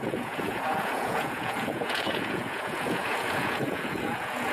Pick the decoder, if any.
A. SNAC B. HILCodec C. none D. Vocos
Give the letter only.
D